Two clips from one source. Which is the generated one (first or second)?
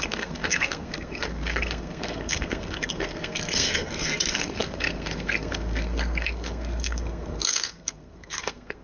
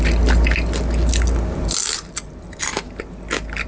first